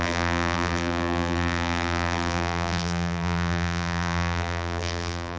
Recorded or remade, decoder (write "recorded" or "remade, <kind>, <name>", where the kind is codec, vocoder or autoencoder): remade, vocoder, BigVGAN v2